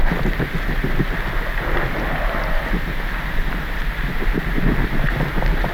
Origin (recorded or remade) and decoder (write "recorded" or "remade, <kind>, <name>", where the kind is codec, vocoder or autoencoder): recorded